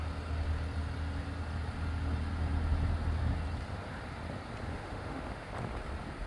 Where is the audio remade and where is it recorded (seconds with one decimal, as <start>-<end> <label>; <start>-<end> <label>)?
0.0-4.7 recorded; 4.7-5.5 remade; 5.5-6.3 recorded